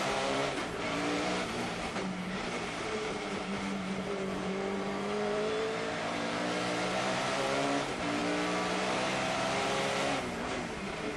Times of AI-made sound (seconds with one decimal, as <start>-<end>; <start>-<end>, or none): 0.0-6.4; 7.0-8.2; 8.7-11.2